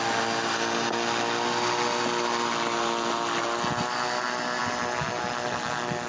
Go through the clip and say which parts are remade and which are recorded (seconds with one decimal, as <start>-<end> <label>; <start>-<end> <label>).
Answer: 0.0-6.1 recorded